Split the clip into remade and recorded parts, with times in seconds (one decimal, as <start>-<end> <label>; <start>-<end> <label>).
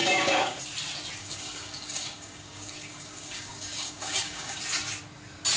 0.0-0.6 remade; 0.6-1.2 recorded; 1.2-4.6 remade; 4.6-5.6 recorded